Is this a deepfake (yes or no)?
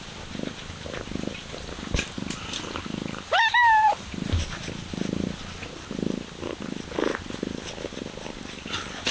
no